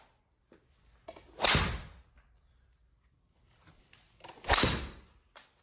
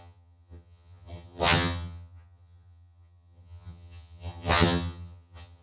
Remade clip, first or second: second